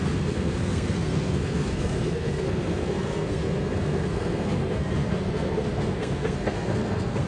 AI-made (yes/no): yes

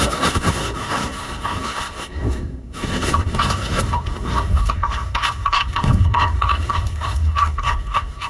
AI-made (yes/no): yes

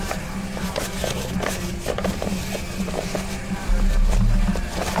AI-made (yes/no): no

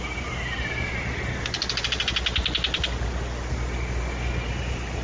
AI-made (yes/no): no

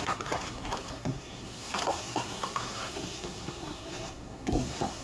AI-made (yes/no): yes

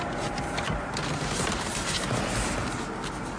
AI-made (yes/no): no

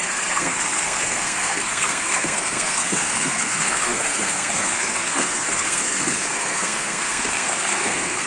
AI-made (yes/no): yes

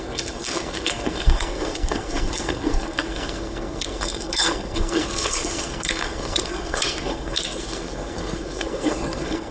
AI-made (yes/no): yes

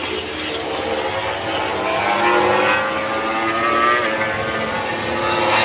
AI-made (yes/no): no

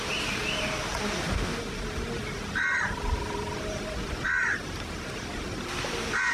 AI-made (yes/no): no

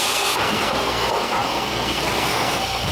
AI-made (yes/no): yes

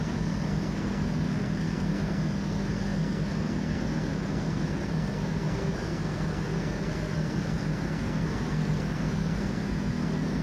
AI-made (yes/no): yes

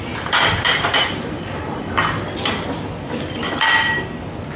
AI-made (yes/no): no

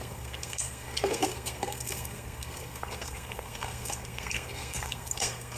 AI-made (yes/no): yes